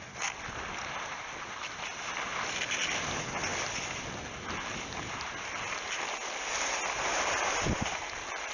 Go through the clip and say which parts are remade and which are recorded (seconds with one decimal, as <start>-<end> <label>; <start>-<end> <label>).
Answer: 0.0-8.5 recorded